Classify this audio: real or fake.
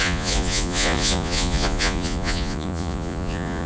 fake